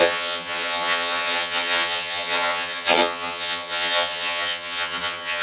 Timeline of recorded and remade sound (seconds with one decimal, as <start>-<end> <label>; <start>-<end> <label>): 0.0-5.4 remade